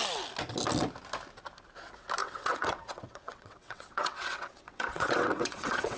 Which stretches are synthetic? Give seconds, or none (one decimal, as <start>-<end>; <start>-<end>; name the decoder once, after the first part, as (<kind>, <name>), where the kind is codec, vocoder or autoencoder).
2.2-6.0 (vocoder, WaveNeXt)